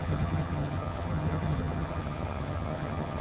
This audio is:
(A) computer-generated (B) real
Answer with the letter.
A